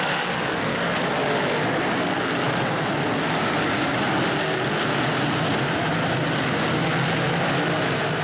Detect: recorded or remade recorded